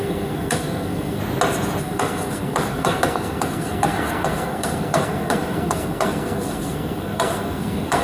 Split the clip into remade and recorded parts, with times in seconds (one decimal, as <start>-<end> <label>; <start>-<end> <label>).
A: 0.0-1.2 remade; 1.2-1.8 recorded; 1.8-8.0 remade